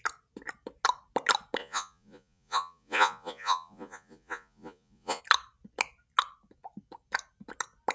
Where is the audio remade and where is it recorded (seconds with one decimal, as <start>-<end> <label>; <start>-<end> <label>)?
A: 0.0-1.6 recorded; 1.6-5.2 remade; 5.2-7.9 recorded